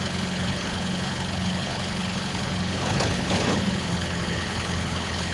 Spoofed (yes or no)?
yes